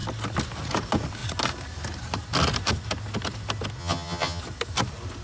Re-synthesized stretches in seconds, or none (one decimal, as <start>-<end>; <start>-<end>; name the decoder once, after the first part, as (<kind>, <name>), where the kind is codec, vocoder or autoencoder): 3.8-4.4 (vocoder, HiFi-GAN)